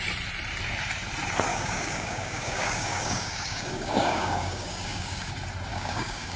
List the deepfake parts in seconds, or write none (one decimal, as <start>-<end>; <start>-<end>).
1.5-5.3; 5.7-6.4